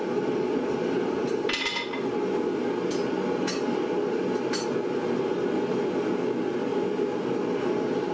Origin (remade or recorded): recorded